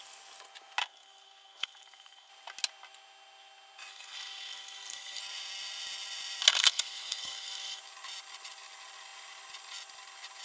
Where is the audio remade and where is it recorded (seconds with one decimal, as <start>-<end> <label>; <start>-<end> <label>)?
0.0-0.8 recorded; 0.8-2.3 remade; 2.3-3.9 recorded; 3.9-5.2 remade; 5.2-6.5 recorded; 6.5-7.8 remade; 7.8-10.4 recorded